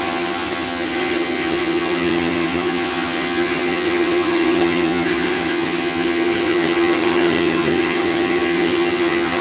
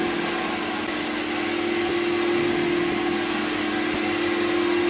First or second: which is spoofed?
first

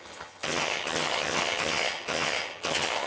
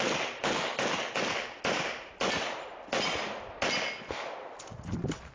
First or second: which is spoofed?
first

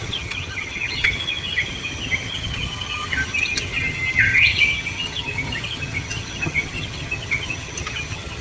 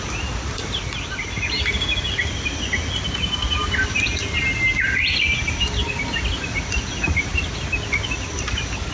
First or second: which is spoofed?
first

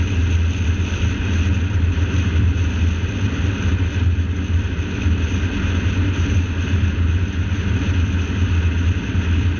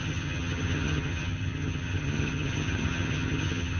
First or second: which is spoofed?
second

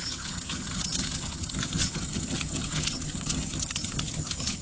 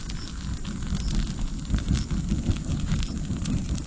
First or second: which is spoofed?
first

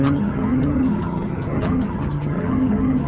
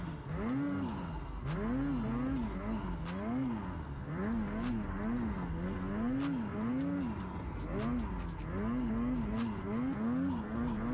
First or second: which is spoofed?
first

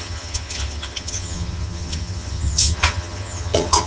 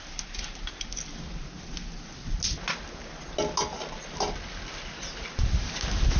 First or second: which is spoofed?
first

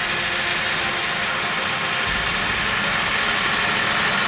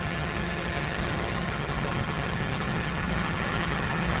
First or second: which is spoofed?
second